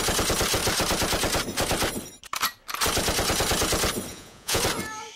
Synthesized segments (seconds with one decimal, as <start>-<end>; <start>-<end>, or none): 4.1-4.6